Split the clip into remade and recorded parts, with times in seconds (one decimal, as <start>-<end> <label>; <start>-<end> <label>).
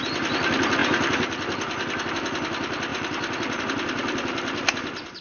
0.0-2.9 recorded; 2.9-3.6 remade; 3.6-5.2 recorded